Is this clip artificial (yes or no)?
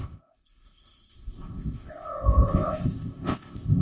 yes